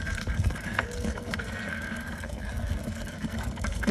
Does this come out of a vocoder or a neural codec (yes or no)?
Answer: yes